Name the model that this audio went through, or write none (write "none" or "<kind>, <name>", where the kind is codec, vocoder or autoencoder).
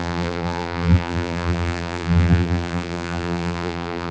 vocoder, BigVGAN v2